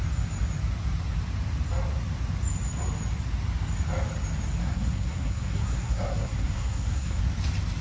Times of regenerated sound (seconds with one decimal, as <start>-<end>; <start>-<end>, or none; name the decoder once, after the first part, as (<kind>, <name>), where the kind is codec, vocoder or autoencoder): 4.6-7.2 (codec, SNAC)